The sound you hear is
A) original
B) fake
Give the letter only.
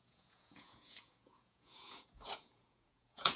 B